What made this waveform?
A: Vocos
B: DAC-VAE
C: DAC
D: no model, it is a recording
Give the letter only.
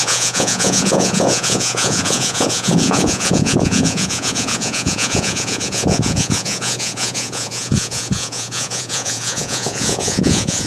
A